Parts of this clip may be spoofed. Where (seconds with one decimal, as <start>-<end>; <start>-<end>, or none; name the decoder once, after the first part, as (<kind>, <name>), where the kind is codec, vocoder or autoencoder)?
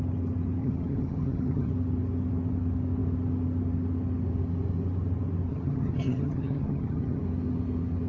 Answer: 0.6-1.7 (vocoder, HiFi-GAN); 5.5-7.2